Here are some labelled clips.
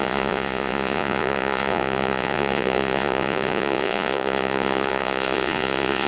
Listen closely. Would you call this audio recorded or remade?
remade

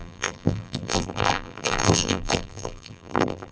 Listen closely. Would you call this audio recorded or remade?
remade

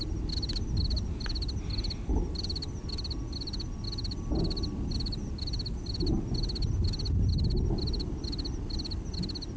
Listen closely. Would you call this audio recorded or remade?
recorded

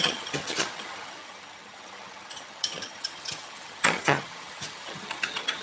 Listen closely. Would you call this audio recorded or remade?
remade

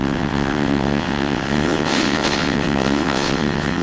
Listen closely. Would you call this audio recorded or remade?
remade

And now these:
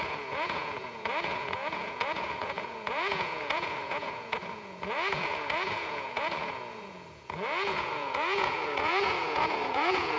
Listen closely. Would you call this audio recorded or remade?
remade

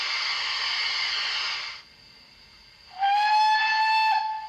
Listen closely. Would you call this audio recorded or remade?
recorded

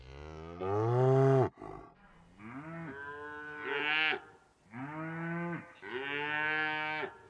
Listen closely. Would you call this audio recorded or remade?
recorded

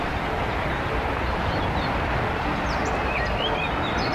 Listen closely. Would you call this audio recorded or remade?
recorded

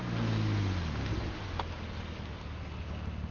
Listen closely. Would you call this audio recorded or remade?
recorded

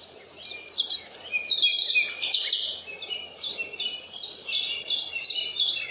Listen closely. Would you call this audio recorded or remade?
recorded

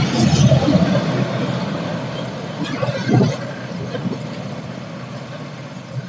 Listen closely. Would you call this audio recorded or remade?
recorded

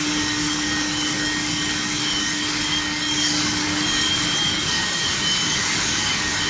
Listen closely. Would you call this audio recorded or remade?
remade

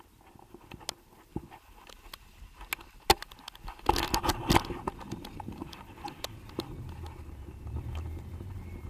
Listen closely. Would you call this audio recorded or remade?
recorded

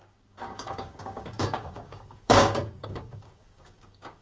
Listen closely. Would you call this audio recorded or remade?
remade